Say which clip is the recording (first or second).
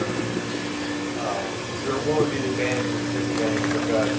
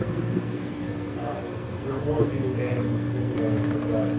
first